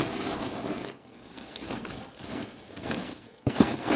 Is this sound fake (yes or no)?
yes